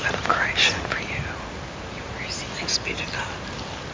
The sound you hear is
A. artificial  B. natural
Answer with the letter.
B